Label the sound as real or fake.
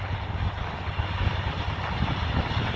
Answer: real